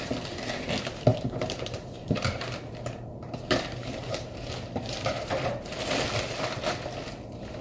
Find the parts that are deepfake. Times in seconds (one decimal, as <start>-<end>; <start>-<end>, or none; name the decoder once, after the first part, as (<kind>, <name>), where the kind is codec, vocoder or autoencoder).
1.1-5.7 (vocoder, BigVGAN v2)